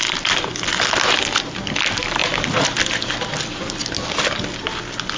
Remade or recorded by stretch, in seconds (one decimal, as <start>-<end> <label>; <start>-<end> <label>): 0.0-5.2 recorded